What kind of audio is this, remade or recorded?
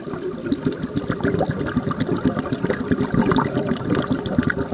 recorded